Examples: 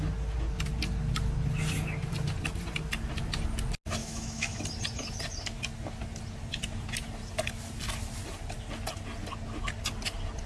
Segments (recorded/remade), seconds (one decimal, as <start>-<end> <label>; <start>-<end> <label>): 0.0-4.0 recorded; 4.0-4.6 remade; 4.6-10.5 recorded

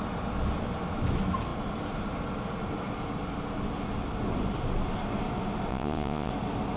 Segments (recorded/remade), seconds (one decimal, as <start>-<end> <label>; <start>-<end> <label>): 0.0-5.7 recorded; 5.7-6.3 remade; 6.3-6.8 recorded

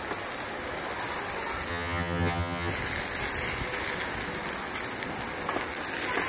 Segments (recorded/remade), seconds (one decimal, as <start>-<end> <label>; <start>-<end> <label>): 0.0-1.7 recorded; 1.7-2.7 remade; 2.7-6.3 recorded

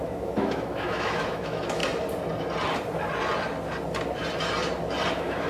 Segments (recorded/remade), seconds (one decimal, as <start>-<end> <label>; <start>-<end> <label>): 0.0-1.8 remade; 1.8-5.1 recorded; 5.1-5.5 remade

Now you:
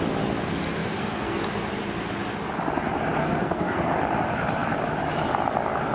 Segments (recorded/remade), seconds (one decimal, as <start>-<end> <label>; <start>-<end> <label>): 0.0-0.8 recorded; 0.8-1.4 remade; 1.4-3.2 recorded; 3.2-3.9 remade; 3.9-5.9 recorded

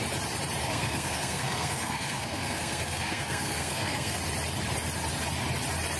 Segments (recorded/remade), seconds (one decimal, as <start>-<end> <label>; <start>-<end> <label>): 0.0-0.6 recorded; 0.6-4.2 remade; 4.2-6.0 recorded

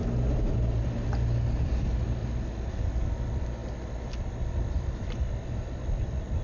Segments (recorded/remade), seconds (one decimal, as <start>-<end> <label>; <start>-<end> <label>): 0.0-0.8 remade; 0.8-2.2 recorded; 2.2-2.8 remade; 2.8-6.4 recorded